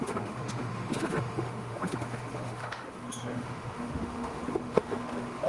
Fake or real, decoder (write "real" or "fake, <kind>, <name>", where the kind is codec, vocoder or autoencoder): fake, autoencoder, DAC-VAE